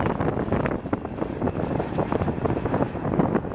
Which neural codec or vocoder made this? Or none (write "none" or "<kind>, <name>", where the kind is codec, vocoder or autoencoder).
none